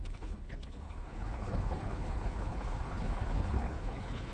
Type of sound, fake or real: fake